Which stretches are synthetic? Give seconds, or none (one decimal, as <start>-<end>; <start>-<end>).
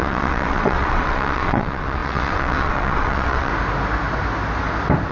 0.0-3.5